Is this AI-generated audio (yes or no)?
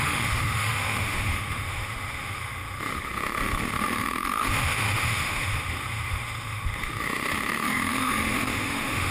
yes